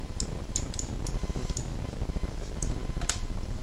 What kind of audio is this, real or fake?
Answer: real